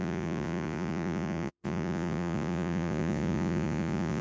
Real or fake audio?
fake